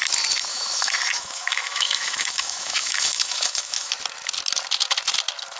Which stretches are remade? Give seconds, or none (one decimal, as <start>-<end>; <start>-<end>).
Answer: 0.5-3.9